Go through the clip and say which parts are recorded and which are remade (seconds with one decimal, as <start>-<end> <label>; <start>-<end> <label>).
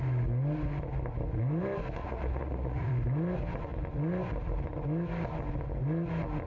0.0-2.0 recorded; 2.0-2.9 remade; 2.9-6.5 recorded